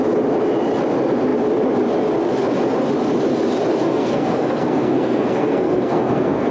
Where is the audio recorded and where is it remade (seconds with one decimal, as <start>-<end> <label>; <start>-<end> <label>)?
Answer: 0.0-3.7 recorded; 3.7-6.5 remade